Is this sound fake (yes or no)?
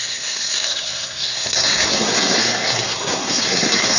yes